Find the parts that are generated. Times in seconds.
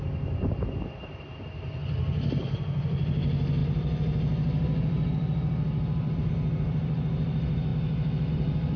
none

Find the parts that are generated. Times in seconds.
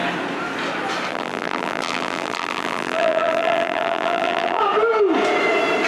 1.1-4.6 (vocoder, BigVGAN v2)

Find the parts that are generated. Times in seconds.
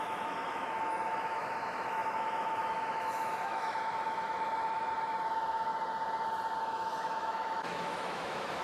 0.0-5.7 (autoencoder, DAC-VAE); 6.6-8.6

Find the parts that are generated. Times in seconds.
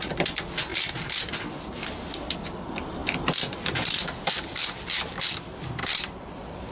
none